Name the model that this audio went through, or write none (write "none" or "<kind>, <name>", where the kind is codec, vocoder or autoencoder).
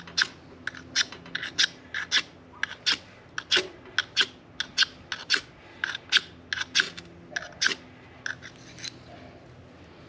none